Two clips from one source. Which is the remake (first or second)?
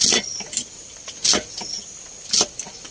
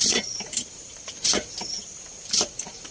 second